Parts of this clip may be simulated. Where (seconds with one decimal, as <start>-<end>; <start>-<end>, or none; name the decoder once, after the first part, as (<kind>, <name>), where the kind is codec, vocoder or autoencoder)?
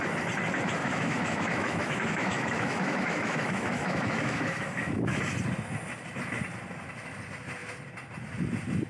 0.8-5.2 (autoencoder, DAC-VAE)